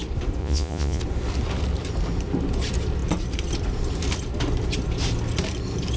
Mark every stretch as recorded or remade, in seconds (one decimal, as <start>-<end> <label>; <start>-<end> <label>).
0.0-0.4 recorded; 0.4-1.0 remade; 1.0-6.0 recorded